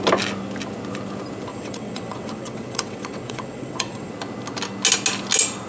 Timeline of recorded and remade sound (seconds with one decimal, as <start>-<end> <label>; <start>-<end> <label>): 0.0-1.5 recorded; 1.5-4.1 remade; 4.1-5.7 recorded